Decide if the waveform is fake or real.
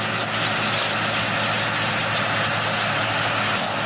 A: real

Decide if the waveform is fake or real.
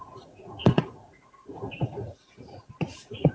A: fake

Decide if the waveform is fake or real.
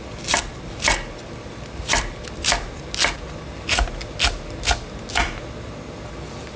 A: real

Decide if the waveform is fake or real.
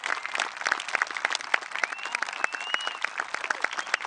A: real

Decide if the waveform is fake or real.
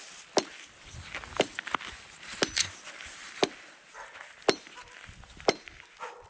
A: real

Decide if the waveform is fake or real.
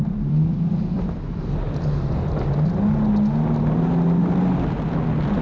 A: real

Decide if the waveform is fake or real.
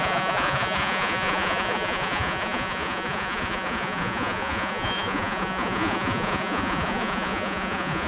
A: fake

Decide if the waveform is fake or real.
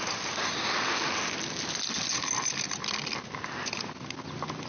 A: real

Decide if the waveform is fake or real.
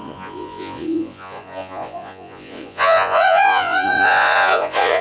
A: fake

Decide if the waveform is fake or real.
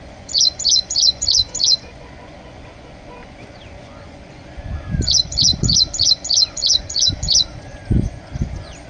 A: fake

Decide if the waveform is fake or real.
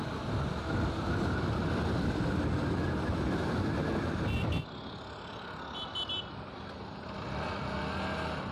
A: real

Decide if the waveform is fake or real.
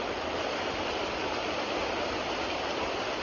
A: real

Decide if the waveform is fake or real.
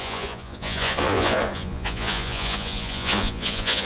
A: fake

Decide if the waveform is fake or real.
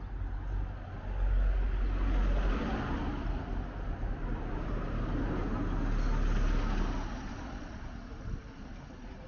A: real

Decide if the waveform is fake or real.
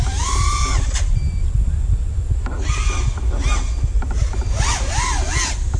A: real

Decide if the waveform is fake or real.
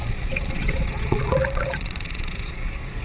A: fake